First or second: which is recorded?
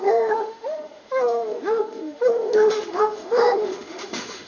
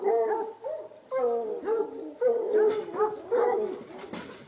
second